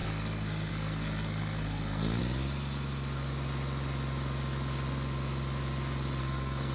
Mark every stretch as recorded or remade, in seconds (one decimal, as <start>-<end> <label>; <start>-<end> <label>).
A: 0.0-2.2 remade; 2.2-6.2 recorded; 6.2-6.7 remade